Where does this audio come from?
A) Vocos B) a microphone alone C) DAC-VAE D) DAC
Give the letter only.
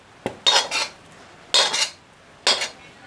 B